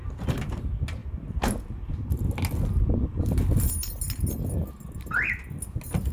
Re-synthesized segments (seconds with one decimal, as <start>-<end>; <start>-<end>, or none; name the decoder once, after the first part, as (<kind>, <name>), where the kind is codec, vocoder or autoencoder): none